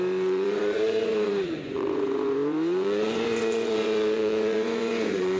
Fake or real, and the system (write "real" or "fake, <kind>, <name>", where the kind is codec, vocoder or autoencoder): fake, vocoder, Vocos